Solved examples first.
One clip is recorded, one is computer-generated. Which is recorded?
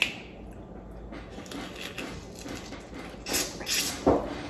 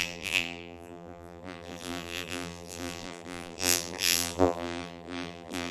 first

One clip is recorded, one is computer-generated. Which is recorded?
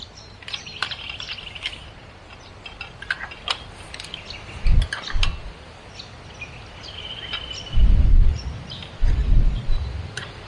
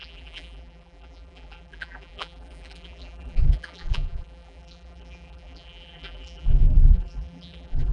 first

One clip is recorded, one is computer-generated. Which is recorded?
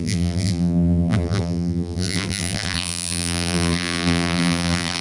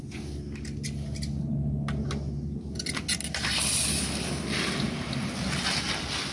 second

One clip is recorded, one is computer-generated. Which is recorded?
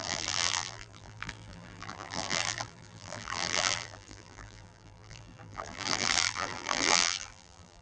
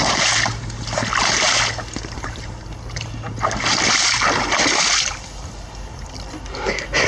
second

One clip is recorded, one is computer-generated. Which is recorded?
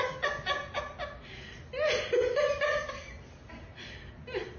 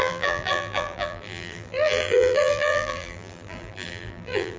first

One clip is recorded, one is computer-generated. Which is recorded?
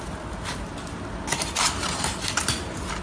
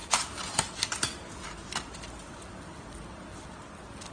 second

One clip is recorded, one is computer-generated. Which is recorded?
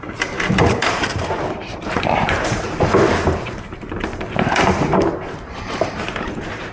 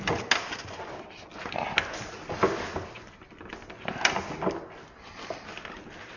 second